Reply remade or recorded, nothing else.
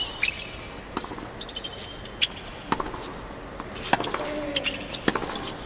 recorded